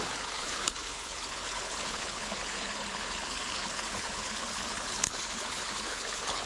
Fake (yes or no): yes